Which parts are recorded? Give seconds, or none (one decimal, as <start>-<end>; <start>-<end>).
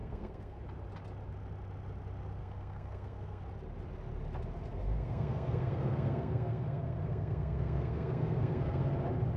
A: 0.6-2.4; 3.4-4.7; 8.9-9.4